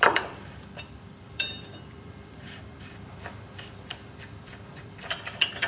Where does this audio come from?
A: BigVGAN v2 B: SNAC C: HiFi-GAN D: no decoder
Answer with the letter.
A